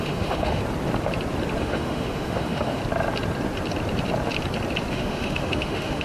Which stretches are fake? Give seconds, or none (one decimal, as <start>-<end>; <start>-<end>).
0.0-0.6; 1.6-2.8; 4.9-6.0